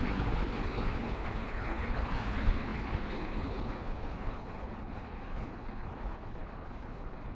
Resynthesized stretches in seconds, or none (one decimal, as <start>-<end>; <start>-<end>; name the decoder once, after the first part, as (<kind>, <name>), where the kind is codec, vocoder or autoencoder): 0.0-7.3 (codec, HILCodec)